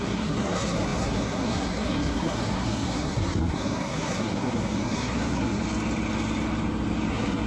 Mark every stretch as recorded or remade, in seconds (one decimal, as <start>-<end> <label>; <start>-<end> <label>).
0.0-5.6 remade; 5.6-7.1 recorded; 7.1-7.5 remade